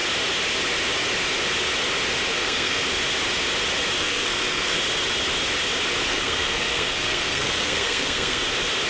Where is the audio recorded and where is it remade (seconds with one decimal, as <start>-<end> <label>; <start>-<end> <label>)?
0.0-2.3 recorded; 2.3-2.8 remade; 2.8-4.0 recorded; 4.0-4.8 remade; 4.8-6.1 recorded; 6.1-8.4 remade; 8.4-8.9 recorded